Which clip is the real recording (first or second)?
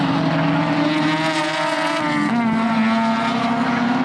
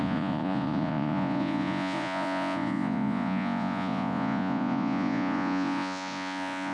first